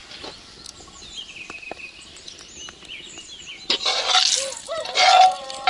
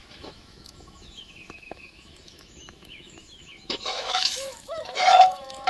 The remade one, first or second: second